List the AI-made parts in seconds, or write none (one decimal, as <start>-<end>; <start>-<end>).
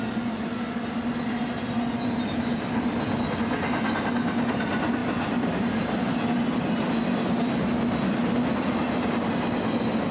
none